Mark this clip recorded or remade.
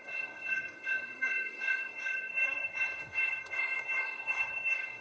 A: remade